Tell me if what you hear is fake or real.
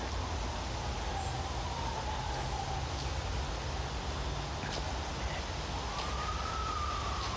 real